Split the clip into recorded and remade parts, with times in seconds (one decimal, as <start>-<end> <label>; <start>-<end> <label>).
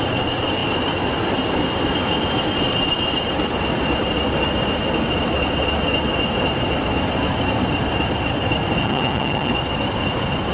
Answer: 0.0-8.8 recorded; 8.8-9.5 remade; 9.5-10.5 recorded